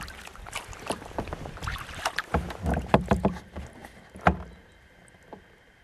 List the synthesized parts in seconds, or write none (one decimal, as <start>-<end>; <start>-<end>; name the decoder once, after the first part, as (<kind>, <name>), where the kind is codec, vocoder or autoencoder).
none